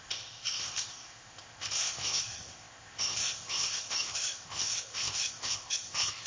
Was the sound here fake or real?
fake